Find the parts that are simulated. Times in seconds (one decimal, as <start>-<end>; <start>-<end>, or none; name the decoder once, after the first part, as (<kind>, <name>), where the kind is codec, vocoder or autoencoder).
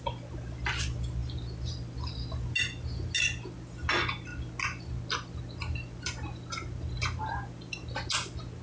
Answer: none